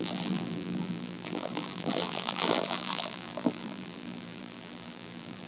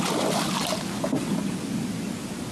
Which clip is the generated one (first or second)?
first